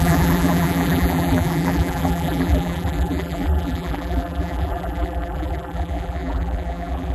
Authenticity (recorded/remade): remade